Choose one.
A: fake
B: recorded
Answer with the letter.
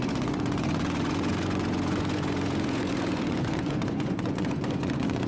A